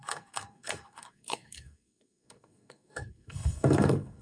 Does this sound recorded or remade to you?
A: remade